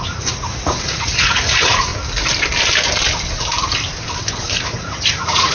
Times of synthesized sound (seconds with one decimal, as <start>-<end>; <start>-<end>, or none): 0.0-1.9; 4.3-5.5